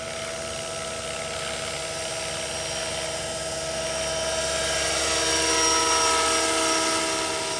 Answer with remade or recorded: recorded